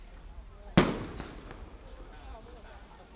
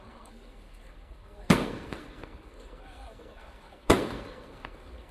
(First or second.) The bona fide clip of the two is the first